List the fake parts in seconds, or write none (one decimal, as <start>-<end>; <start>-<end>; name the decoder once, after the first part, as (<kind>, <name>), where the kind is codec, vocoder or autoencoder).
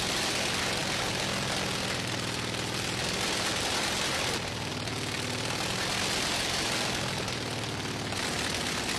none